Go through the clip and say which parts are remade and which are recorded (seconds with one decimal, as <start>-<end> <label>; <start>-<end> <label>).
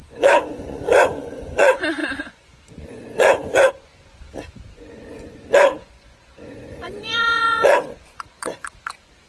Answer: 0.0-9.3 remade